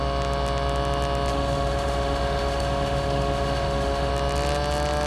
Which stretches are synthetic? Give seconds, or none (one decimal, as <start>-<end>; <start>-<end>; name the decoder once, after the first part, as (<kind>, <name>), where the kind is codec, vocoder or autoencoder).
1.3-4.1 (autoencoder, DAC-VAE)